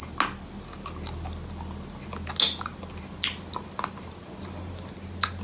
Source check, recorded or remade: recorded